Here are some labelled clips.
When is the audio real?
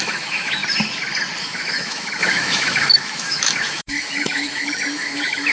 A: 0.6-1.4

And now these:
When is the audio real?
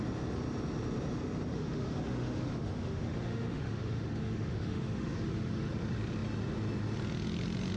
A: 0.0-1.5; 5.7-7.8